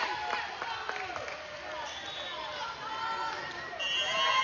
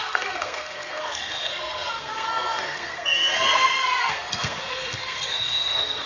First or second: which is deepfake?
second